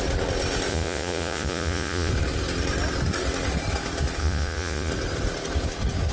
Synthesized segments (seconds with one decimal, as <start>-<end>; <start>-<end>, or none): 0.7-2.1; 4.2-4.9